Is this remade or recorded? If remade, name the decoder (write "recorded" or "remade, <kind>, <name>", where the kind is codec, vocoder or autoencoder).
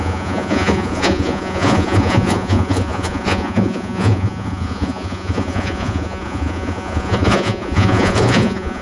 remade, vocoder, Vocos